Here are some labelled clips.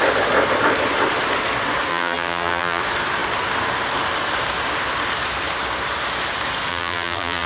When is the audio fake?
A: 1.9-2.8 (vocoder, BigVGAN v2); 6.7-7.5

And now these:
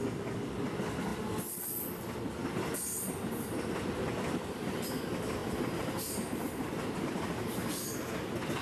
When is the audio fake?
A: 2.4-3.1 (vocoder, BigVGAN v2); 5.4-7.8

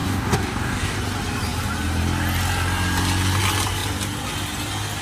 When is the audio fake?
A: 0.0-1.0 (codec, DAC)